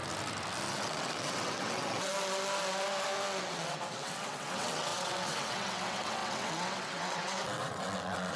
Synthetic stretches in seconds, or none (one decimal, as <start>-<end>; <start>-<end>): 0.7-2.1; 3.5-8.4